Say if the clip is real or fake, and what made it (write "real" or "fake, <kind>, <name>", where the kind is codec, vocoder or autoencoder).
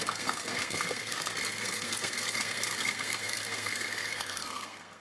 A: fake, codec, SNAC